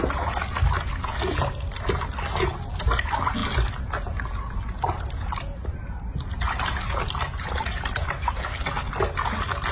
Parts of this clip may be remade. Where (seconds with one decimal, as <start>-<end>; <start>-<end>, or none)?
none